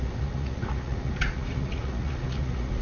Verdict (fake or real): fake